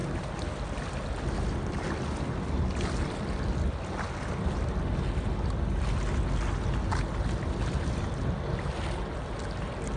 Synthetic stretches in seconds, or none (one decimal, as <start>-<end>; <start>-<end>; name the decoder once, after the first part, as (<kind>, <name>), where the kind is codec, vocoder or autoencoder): none